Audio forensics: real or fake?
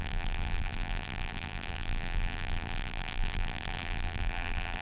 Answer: fake